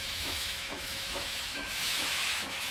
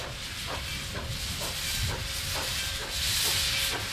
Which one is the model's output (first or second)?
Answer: first